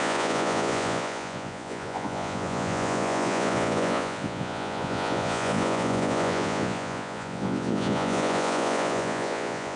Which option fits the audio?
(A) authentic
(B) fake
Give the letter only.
B